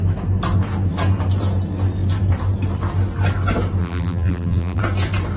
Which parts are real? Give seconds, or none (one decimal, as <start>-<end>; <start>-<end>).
0.0-3.8; 4.8-5.4